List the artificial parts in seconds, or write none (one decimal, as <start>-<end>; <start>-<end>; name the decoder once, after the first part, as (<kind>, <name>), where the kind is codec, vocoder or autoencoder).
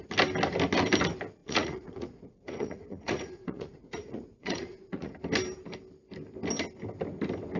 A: 1.4-5.1 (vocoder, Vocos)